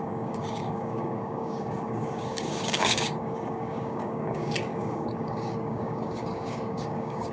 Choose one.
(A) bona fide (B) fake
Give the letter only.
B